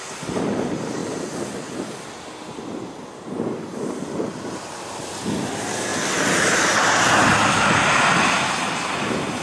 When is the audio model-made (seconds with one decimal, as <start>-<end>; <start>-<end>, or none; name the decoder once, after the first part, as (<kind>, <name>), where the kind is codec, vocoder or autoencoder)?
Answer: none